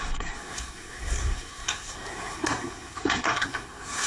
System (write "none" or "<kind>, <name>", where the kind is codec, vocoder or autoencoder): codec, SNAC